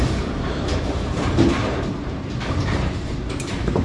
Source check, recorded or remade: remade